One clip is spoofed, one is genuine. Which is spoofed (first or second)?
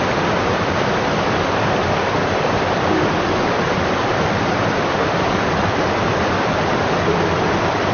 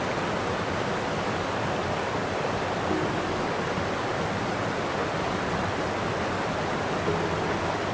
first